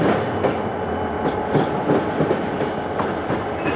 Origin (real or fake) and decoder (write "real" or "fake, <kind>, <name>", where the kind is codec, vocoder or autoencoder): real